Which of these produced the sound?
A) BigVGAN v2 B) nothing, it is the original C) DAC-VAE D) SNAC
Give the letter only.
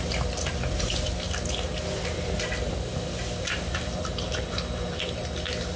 B